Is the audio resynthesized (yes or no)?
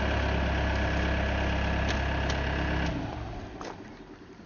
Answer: no